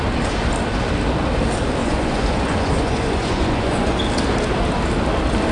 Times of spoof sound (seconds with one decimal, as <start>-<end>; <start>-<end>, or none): 1.8-4.0